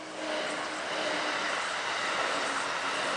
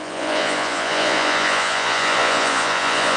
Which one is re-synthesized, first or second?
second